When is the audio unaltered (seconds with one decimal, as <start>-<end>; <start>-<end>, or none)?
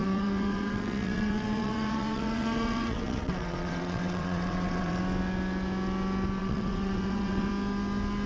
5.0-6.4; 7.5-8.3